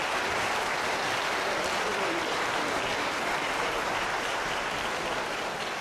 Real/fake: fake